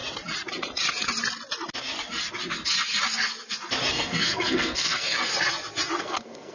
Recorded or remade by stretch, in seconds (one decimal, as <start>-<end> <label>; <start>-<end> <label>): 0.0-3.9 recorded; 3.9-5.3 remade; 5.3-6.0 recorded; 6.0-6.5 remade